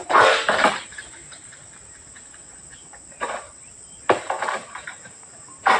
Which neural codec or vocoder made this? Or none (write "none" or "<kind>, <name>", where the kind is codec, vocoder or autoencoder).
vocoder, BigVGAN v2